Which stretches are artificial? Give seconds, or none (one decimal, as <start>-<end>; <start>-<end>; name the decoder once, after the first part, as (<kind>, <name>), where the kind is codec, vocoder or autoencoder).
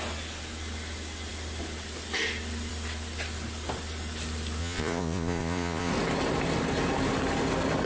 4.6-5.9 (vocoder, Vocos)